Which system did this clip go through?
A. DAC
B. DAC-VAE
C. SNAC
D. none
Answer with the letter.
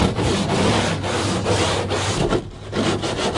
D